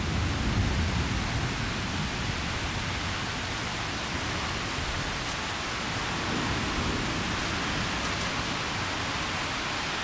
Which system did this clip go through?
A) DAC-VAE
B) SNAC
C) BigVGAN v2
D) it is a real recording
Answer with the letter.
D